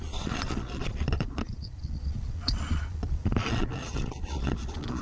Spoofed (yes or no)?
yes